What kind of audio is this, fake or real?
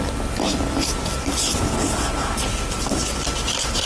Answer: real